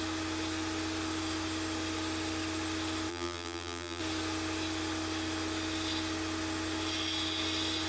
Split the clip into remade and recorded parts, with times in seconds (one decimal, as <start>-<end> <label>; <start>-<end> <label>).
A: 0.0-3.1 recorded; 3.1-4.0 remade; 4.0-7.9 recorded